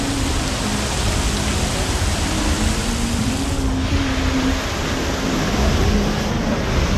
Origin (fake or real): real